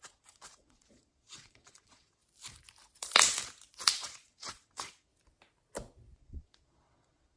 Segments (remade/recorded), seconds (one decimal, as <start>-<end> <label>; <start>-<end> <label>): 0.0-2.2 remade; 2.2-3.9 recorded; 3.9-5.1 remade; 5.1-6.2 recorded; 6.2-7.4 remade